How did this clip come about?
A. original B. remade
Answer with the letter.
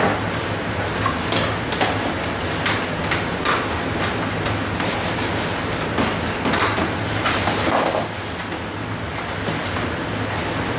A